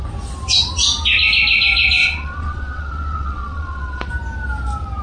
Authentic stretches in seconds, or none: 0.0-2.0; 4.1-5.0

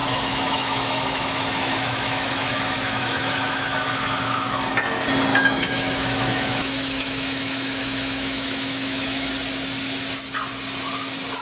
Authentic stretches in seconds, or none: 4.6-5.3; 9.3-11.4

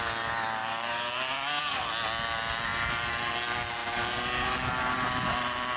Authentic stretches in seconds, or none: 0.0-0.6; 1.6-5.8

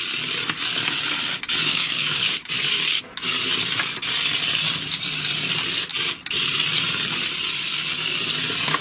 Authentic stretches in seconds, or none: 0.0-1.7; 2.4-8.8

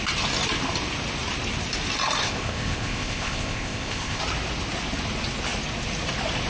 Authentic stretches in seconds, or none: 0.0-2.2; 4.2-6.5

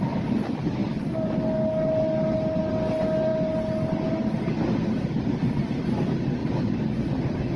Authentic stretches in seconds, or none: 0.0-6.4

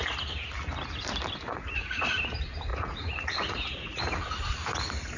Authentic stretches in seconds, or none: 0.0-1.5; 2.2-2.7; 4.0-5.2

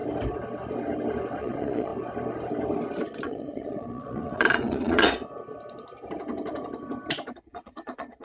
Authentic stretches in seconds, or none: 0.0-1.4; 1.9-3.2; 5.2-7.3